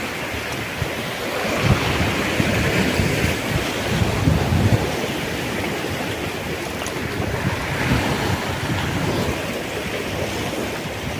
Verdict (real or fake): real